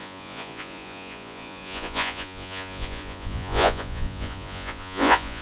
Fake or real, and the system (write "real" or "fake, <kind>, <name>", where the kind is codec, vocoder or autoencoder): fake, vocoder, Vocos